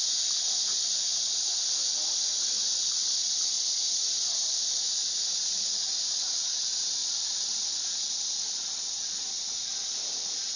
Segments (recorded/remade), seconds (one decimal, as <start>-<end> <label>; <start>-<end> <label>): 0.0-2.3 recorded; 2.3-3.5 remade; 3.5-10.6 recorded